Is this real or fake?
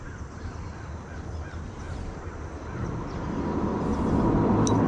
real